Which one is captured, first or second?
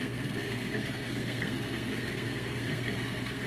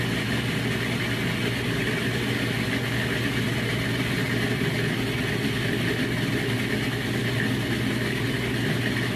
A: second